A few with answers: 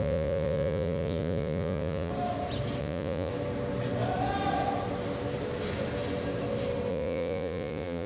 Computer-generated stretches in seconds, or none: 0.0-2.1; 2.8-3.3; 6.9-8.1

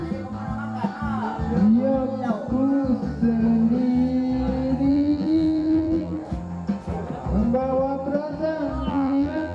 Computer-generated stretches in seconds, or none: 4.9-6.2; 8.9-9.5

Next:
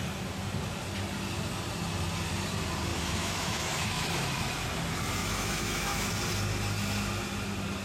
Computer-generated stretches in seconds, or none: 2.9-4.1; 5.2-6.1